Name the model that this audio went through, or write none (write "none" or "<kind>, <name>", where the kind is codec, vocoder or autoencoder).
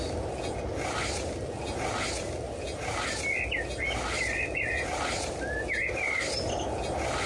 none